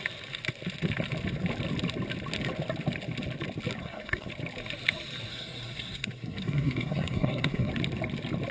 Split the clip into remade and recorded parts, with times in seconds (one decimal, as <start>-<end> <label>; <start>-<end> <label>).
0.0-3.8 recorded; 3.8-4.3 remade; 4.3-5.3 recorded; 5.3-7.7 remade; 7.7-8.5 recorded